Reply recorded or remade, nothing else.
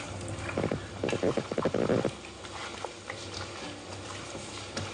recorded